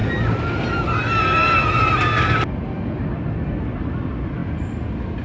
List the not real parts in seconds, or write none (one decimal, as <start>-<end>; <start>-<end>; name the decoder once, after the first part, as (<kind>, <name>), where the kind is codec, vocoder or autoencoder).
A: none